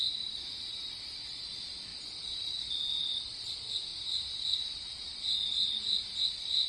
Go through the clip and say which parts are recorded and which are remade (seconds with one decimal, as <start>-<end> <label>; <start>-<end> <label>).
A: 0.0-6.7 recorded